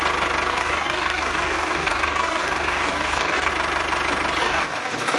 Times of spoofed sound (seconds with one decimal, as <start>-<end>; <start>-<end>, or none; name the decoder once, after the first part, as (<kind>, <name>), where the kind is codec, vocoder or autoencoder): 0.5-3.5 (codec, DAC); 4.4-5.2